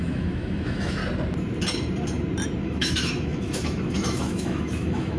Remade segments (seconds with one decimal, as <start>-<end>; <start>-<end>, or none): 0.0-1.0; 2.6-5.2